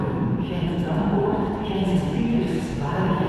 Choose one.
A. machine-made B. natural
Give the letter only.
A